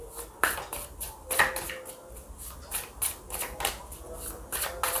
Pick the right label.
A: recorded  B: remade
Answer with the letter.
A